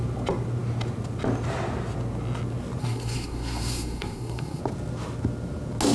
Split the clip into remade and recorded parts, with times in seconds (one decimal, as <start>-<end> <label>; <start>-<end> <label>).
0.0-2.8 recorded; 2.8-4.6 remade; 4.6-5.9 recorded